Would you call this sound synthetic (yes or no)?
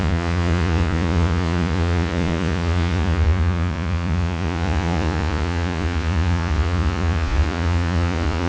yes